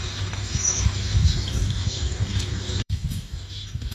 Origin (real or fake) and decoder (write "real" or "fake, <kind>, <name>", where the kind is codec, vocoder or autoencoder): fake, codec, DAC